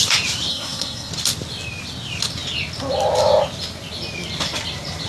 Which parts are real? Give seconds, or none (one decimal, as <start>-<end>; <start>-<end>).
0.0-0.5; 1.1-5.1